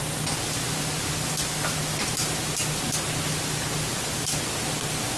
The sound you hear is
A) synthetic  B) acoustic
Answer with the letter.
B